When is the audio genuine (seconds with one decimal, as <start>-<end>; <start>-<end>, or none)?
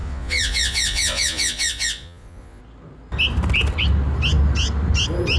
2.6-5.4